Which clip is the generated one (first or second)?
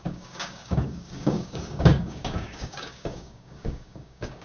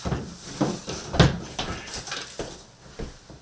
first